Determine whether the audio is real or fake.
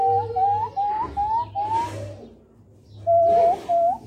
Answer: real